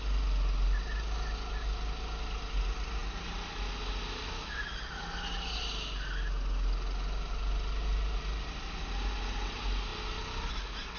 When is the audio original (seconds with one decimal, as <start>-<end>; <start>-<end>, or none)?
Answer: 0.0-11.0